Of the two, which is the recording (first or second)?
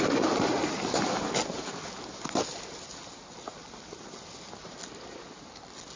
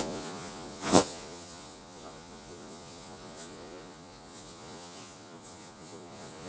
first